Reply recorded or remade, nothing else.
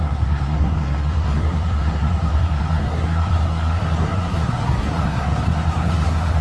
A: remade